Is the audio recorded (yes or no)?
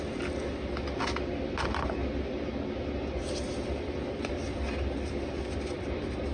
yes